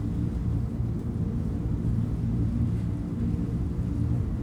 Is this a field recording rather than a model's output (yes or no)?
no